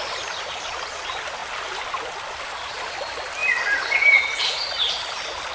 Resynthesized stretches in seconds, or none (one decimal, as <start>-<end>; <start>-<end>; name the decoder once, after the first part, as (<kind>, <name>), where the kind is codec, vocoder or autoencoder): none